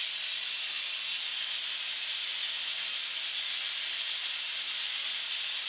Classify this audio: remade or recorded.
recorded